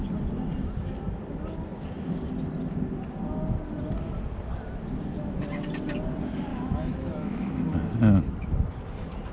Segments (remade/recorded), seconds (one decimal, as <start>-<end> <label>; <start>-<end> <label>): 0.0-6.5 recorded; 6.5-7.5 remade; 7.5-9.3 recorded